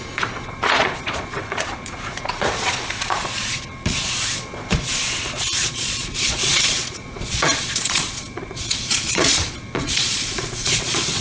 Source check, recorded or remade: remade